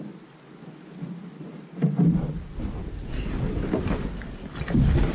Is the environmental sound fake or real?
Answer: real